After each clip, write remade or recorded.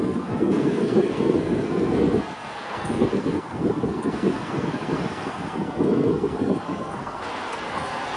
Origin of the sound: remade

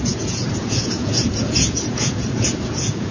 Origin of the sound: remade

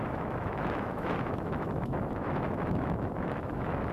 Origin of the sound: remade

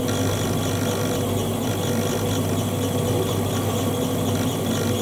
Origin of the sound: recorded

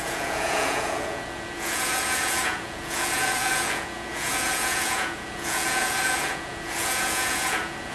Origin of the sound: remade